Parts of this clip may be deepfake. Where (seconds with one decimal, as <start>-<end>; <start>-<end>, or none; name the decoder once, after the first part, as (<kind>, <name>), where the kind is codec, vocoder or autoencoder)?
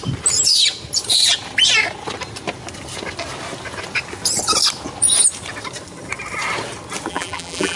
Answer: 7.1-7.8 (vocoder, BigVGAN v2)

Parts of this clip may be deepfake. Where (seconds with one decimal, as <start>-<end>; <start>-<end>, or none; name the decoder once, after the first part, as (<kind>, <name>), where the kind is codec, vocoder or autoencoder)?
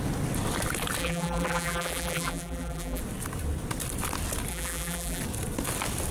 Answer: 1.0-3.0 (vocoder, BigVGAN v2); 4.5-5.2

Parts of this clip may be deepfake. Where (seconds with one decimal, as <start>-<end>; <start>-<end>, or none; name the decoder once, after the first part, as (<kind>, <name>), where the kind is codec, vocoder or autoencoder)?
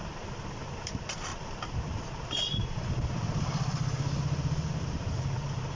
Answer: 0.8-1.3 (vocoder, BigVGAN v2); 4.7-5.7